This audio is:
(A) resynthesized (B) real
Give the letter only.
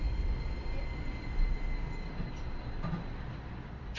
B